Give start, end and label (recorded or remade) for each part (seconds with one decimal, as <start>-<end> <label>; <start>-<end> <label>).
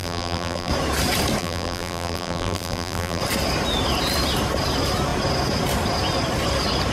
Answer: 0.0-0.7 remade; 0.7-1.4 recorded; 1.4-3.2 remade; 3.2-6.9 recorded